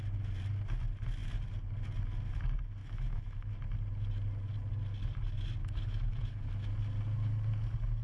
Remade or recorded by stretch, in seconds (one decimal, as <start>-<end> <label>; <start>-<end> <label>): 0.0-2.8 recorded; 2.8-3.5 remade; 3.5-5.6 recorded; 5.6-6.5 remade; 6.5-8.0 recorded